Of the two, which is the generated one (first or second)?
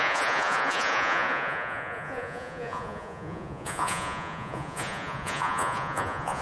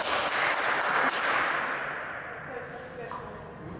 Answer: first